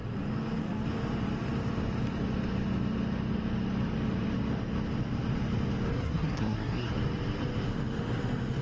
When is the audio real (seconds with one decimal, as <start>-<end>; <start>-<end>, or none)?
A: 0.0-5.9; 6.9-8.6